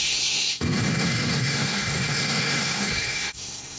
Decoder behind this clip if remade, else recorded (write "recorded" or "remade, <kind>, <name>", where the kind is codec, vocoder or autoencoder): remade, codec, SNAC